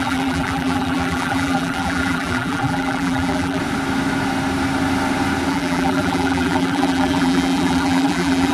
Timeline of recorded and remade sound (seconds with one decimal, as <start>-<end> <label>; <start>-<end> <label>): 0.0-3.6 remade; 3.6-5.5 recorded; 5.5-8.5 remade